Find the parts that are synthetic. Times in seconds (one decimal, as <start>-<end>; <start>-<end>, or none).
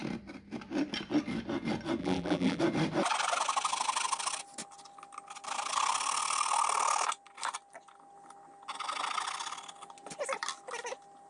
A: 2.0-2.6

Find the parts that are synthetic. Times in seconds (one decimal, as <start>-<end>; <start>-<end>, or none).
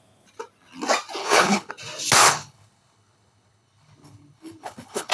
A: 1.2-1.7; 2.2-5.1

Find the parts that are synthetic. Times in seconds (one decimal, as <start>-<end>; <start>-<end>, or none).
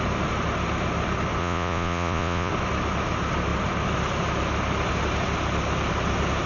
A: 1.4-2.5